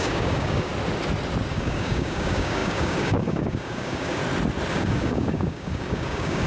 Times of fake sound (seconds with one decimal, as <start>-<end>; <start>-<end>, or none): 0.0-0.7; 1.5-4.2; 4.7-6.5